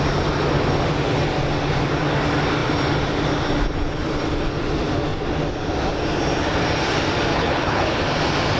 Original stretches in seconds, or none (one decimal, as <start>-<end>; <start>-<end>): 0.0-7.3; 8.0-8.6